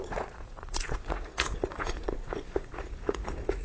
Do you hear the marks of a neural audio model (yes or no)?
yes